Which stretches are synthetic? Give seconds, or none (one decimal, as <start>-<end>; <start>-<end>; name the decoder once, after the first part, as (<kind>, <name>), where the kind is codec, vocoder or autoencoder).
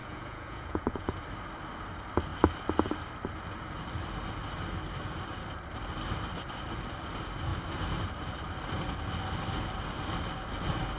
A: 0.0-1.1 (vocoder, Vocos)